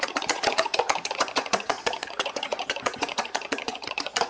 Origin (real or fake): fake